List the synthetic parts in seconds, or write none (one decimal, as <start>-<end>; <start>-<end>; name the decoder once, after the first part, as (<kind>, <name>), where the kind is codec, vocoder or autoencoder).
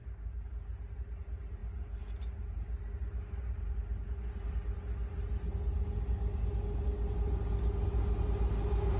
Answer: none